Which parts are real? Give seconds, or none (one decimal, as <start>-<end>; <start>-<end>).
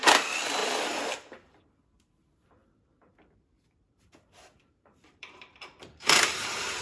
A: 0.0-0.6; 1.7-2.6